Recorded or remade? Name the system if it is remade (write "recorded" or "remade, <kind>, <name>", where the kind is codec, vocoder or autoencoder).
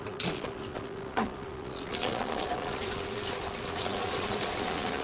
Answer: remade, vocoder, Vocos